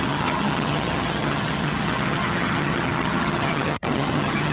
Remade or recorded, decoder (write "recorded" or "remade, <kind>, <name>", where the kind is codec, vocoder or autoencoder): remade, vocoder, HiFi-GAN